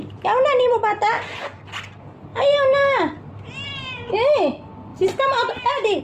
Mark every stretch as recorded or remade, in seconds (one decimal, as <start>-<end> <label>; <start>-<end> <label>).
0.0-4.9 recorded; 4.9-6.0 remade

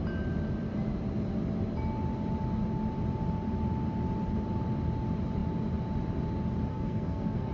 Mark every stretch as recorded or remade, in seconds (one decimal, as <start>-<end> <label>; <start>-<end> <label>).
0.0-6.7 recorded; 6.7-7.5 remade

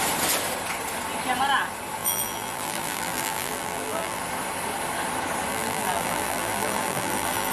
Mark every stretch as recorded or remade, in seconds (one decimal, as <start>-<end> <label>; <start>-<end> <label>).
0.0-2.0 recorded; 2.0-4.2 remade; 4.2-5.5 recorded; 5.5-7.5 remade

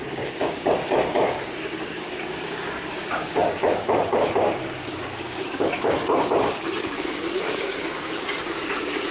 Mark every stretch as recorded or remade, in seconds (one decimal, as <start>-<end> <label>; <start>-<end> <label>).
0.0-9.1 remade

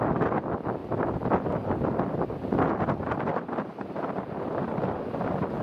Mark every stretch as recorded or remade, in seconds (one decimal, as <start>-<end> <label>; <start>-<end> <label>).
0.0-5.6 recorded

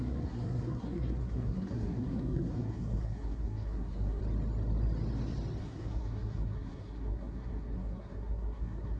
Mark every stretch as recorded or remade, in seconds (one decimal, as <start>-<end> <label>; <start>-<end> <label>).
0.0-4.2 remade; 4.2-5.6 recorded; 5.6-9.0 remade

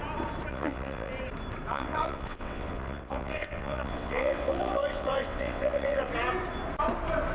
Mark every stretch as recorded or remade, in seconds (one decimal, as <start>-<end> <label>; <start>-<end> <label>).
0.0-0.5 recorded; 0.5-1.1 remade; 1.1-1.7 recorded; 1.7-6.1 remade; 6.1-7.3 recorded

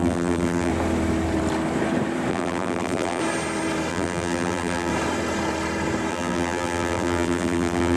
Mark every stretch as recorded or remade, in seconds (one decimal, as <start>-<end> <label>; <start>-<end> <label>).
0.0-0.7 remade; 0.7-2.3 recorded; 2.3-3.2 remade; 3.2-3.9 recorded; 3.9-4.9 remade; 4.9-6.1 recorded; 6.1-8.0 remade